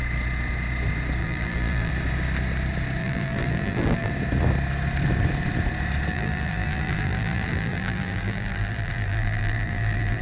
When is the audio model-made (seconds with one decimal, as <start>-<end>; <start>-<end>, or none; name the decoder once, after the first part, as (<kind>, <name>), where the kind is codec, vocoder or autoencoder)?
1.2-1.9 (vocoder, BigVGAN v2); 3.0-4.1; 6.1-10.2